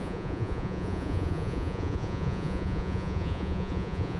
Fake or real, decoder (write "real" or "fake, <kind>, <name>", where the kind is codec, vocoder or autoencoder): fake, vocoder, Vocos